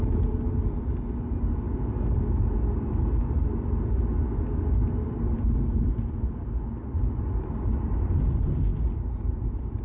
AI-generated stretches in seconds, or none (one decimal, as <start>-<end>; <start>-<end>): none

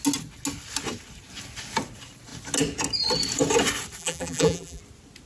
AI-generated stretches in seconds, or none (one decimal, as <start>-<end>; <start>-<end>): 4.0-4.8

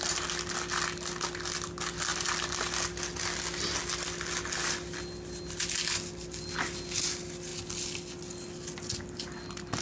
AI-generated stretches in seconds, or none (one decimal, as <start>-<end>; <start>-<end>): none

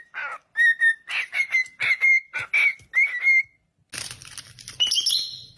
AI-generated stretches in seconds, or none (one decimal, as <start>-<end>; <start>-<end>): none

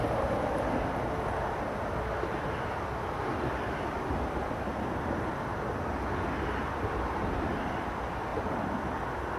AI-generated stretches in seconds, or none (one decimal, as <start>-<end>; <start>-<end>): none

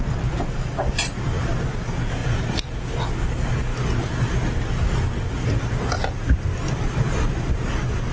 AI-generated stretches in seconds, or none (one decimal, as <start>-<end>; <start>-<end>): none

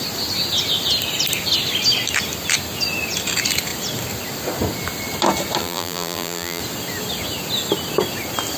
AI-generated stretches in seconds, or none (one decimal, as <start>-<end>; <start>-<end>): 5.6-6.6